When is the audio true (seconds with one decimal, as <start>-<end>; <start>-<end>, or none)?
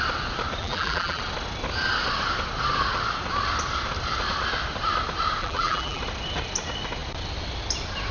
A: 0.0-0.6; 1.2-5.4; 6.0-8.1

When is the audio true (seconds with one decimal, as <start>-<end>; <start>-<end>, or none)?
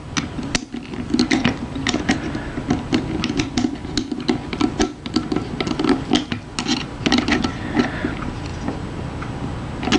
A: 0.0-10.0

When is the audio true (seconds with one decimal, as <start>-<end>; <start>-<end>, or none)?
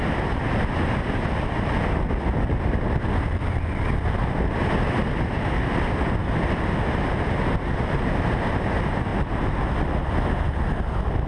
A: 0.0-11.3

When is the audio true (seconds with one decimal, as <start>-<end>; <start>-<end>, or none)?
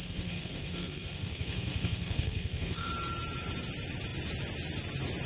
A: 2.9-5.3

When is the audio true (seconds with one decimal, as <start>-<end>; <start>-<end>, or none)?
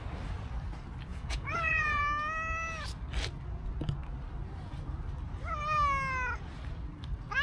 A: 0.0-1.1; 2.0-7.4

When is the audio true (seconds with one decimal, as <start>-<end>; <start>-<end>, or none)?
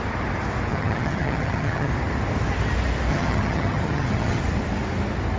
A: 0.0-0.7; 1.9-3.1; 4.4-5.4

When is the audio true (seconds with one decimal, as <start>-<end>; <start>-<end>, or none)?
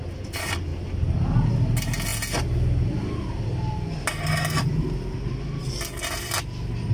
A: 0.0-6.9